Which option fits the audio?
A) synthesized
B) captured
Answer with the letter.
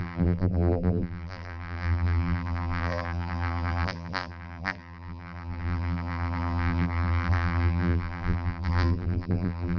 A